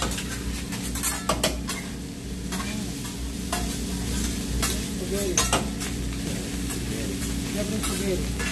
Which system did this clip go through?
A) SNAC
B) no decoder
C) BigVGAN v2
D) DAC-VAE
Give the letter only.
B